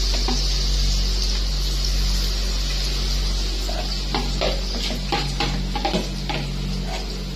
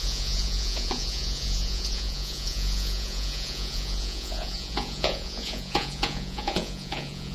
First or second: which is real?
first